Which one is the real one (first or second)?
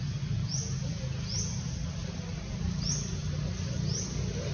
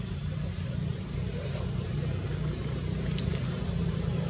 first